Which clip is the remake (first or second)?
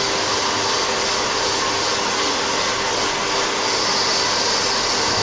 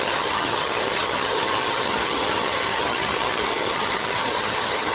second